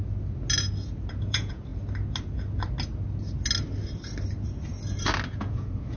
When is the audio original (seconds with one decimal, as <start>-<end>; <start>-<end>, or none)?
0.0-1.2; 1.7-5.3